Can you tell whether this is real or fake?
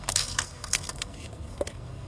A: fake